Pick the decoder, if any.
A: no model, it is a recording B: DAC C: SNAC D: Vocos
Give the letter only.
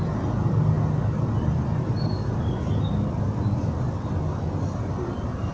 A